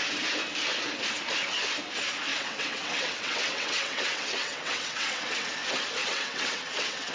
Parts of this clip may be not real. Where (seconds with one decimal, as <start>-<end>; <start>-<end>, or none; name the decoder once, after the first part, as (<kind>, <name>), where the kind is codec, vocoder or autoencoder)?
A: 2.3-5.5 (vocoder, WaveNeXt); 6.0-7.1